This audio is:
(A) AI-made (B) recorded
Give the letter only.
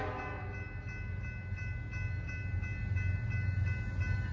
B